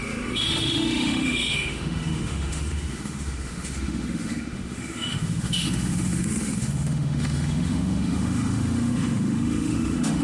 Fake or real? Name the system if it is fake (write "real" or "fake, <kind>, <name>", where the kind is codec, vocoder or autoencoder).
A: fake, autoencoder, DAC-VAE